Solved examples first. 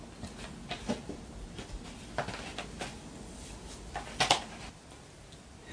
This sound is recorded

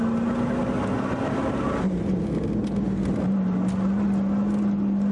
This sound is recorded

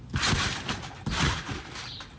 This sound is recorded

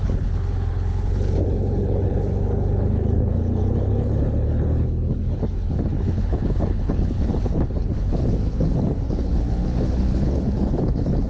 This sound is remade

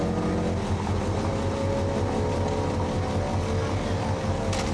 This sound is recorded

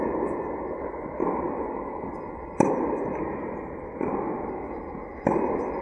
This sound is recorded